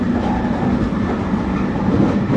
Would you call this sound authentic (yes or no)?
yes